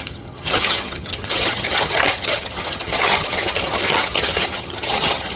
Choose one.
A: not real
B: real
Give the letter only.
A